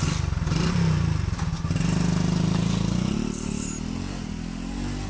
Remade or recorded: recorded